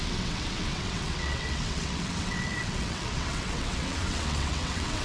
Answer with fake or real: fake